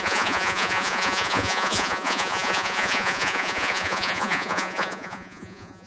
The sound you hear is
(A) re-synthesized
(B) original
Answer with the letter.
A